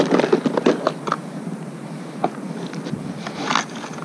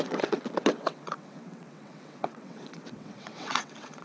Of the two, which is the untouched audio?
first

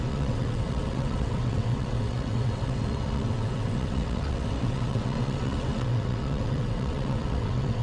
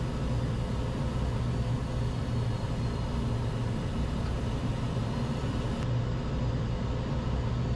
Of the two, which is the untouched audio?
second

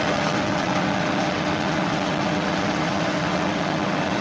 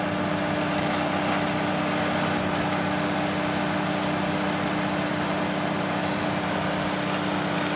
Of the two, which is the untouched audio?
second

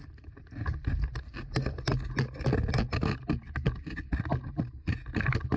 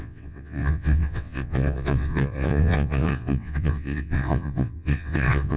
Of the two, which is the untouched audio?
first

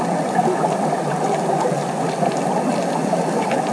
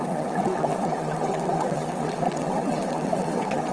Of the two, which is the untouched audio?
first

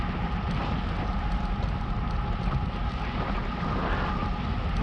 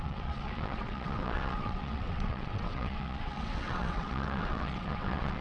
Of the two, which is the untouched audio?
first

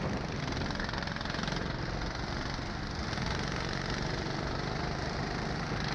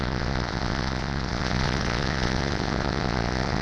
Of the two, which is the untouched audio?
first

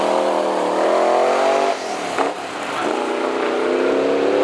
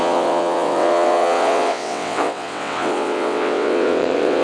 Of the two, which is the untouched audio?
first